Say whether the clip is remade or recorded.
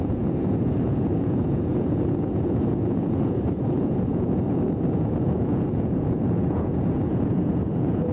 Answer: remade